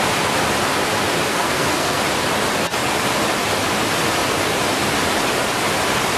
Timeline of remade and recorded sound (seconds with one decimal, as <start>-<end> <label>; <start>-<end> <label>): 0.0-1.3 recorded; 1.3-2.0 remade; 2.0-6.2 recorded